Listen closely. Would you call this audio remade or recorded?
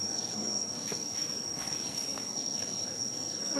remade